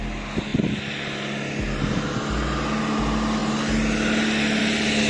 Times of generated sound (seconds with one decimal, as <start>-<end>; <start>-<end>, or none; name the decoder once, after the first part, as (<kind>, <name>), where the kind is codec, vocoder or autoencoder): none